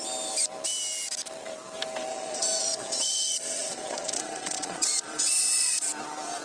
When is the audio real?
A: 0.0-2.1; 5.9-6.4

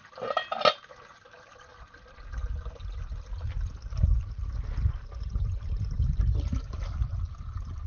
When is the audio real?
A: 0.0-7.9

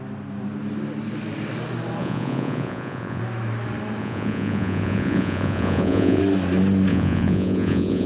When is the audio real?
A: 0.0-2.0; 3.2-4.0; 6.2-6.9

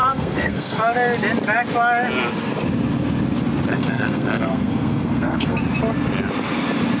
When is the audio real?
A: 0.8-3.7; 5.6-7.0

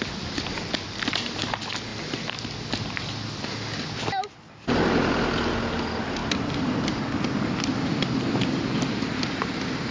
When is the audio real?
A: 0.0-9.9